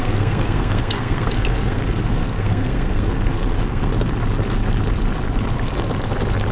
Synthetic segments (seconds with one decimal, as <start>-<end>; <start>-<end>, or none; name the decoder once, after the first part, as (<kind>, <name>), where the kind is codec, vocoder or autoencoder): 0.0-3.9 (codec, SNAC)